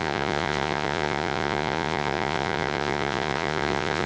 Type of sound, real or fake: fake